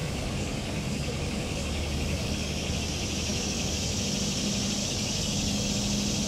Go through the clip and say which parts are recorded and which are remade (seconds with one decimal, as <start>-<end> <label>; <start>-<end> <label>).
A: 0.0-2.9 remade; 2.9-3.3 recorded; 3.3-4.0 remade; 4.0-4.8 recorded; 4.8-5.7 remade; 5.7-6.3 recorded